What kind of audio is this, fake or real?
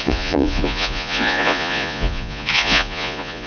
fake